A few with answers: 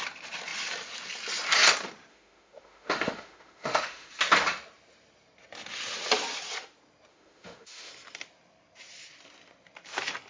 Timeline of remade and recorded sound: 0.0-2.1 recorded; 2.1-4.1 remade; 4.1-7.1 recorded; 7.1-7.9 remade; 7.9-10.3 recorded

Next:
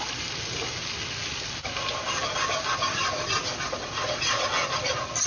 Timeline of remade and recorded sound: 0.0-5.3 recorded

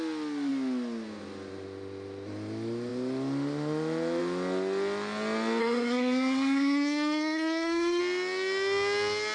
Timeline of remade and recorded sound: 0.0-5.6 recorded; 5.6-8.0 remade; 8.0-9.3 recorded

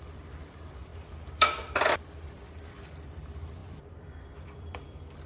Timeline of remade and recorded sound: 0.0-0.9 remade; 0.9-2.7 recorded; 2.7-5.3 remade

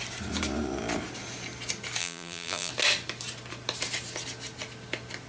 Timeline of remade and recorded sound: 0.0-2.0 recorded; 2.0-2.7 remade; 2.7-5.3 recorded

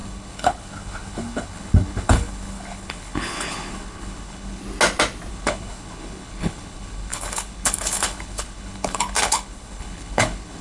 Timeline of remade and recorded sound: 0.0-4.6 remade; 4.6-5.3 recorded; 5.3-10.6 remade